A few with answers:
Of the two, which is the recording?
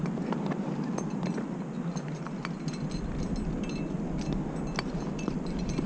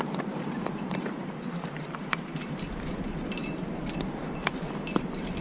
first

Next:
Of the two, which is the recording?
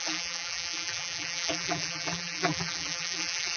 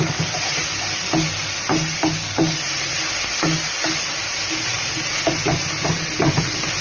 second